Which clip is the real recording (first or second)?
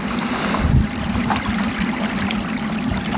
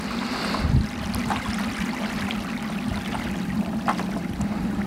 second